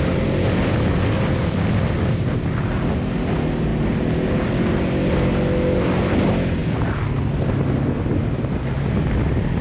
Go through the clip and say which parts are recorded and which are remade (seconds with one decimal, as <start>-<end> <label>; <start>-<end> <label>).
0.0-9.6 recorded